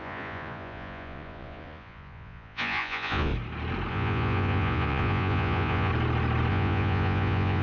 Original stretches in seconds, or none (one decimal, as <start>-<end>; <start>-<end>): 3.3-3.9; 5.9-6.5

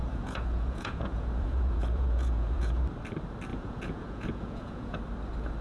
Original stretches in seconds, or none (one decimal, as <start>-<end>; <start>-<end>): 2.8-3.5; 5.0-5.6

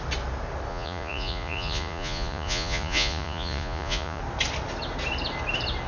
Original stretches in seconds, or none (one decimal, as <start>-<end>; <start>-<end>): 0.0-0.7; 4.2-5.9